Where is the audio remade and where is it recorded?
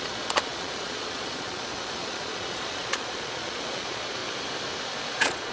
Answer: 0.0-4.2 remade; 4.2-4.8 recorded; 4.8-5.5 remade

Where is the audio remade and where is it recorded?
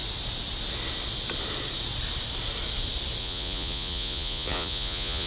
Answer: 0.0-3.2 recorded; 3.2-5.3 remade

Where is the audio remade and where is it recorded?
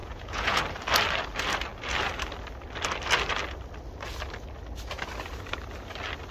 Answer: 0.0-0.6 remade; 0.6-6.3 recorded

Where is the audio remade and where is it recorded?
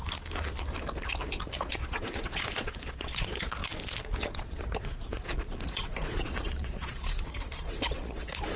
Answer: 0.0-1.6 recorded; 1.6-3.6 remade; 3.6-4.2 recorded; 4.2-8.6 remade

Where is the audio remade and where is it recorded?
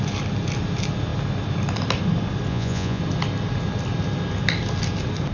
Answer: 0.0-2.5 recorded; 2.5-3.0 remade; 3.0-5.3 recorded